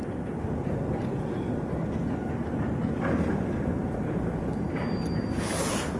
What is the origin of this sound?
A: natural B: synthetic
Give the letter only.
A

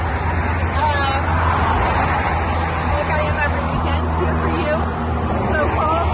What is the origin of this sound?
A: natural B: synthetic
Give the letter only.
A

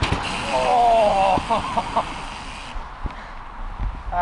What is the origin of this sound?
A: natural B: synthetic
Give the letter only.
A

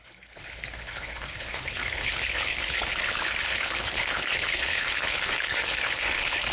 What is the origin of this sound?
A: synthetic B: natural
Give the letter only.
A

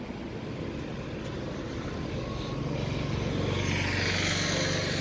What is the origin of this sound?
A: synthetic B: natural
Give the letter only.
B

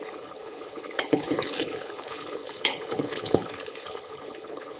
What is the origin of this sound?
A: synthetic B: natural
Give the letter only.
A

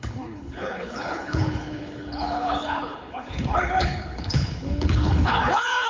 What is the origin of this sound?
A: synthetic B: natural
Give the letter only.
A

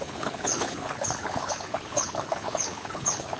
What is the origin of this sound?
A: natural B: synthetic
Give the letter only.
B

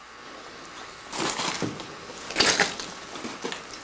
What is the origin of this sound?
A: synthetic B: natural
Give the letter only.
B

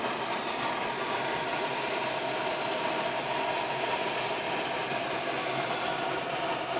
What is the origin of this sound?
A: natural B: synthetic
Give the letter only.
A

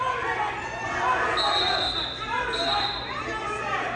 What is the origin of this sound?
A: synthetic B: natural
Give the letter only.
B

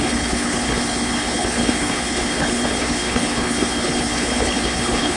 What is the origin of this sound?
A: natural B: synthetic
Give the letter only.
B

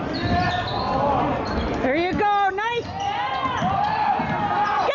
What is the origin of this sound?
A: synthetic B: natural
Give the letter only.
B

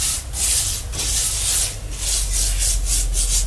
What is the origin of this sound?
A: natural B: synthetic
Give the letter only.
A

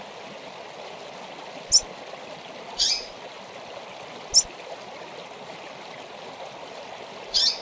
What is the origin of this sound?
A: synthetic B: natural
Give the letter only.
B